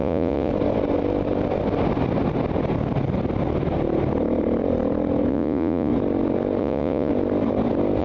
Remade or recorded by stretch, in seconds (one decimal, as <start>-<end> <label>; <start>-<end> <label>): 0.0-0.5 remade; 0.5-5.3 recorded; 5.3-5.9 remade; 5.9-6.6 recorded; 6.6-7.1 remade; 7.1-8.0 recorded